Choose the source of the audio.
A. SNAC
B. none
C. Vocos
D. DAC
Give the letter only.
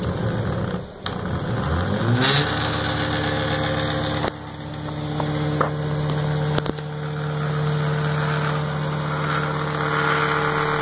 B